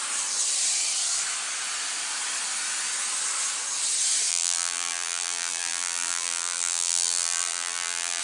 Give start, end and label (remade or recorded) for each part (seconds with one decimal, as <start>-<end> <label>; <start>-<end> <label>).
0.0-4.3 recorded; 4.3-8.2 remade